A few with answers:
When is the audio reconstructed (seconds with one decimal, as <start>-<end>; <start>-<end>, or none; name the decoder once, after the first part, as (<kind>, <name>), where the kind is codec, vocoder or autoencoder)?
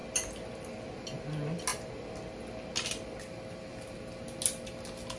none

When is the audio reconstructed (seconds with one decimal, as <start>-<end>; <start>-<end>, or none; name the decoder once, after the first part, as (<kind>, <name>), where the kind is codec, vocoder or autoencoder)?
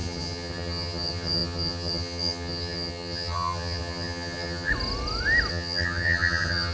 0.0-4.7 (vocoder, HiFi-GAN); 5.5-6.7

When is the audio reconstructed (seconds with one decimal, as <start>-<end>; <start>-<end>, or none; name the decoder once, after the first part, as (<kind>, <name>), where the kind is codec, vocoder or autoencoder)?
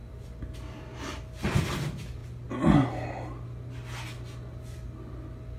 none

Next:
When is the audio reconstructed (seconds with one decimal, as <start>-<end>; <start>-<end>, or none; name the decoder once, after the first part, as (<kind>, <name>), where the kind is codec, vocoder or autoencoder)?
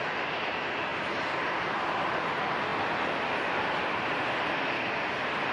none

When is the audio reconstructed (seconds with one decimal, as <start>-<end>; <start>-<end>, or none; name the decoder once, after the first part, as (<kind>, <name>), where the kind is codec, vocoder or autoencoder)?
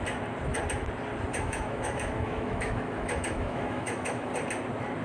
1.3-4.3 (autoencoder, DAC-VAE)